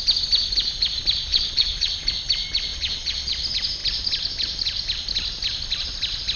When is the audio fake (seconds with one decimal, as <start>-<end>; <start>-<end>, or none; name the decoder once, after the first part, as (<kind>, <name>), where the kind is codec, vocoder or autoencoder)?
1.3-2.1 (vocoder, Vocos); 2.7-3.3